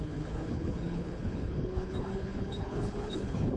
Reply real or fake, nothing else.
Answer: fake